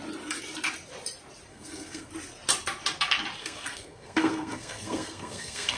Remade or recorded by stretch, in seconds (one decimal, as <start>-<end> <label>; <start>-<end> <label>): 0.0-1.5 recorded; 1.5-2.1 remade; 2.1-3.4 recorded; 3.4-5.8 remade